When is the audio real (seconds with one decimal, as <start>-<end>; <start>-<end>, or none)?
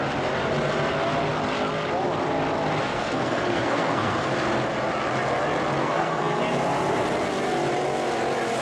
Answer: 0.0-2.8; 4.3-5.8; 6.4-8.6